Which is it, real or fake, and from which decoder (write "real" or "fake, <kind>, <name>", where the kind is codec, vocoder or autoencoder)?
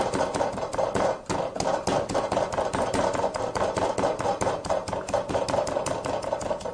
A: real